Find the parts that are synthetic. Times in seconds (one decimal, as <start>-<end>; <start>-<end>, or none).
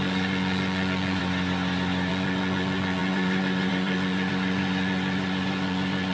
0.0-1.2; 2.1-6.1